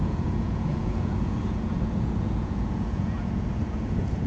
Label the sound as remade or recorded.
remade